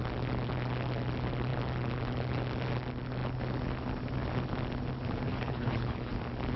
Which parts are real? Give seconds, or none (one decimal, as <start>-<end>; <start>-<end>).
0.0-5.3; 6.1-6.6